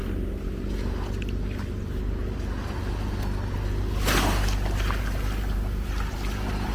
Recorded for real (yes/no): yes